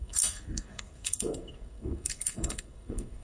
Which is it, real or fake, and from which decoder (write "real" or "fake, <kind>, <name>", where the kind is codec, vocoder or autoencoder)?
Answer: fake, codec, SNAC